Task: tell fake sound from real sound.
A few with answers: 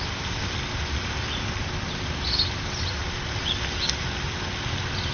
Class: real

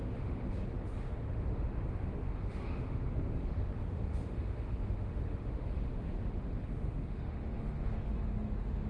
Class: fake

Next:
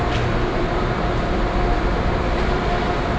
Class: fake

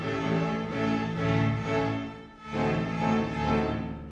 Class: real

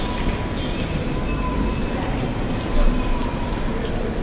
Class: real